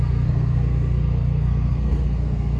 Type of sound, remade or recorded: remade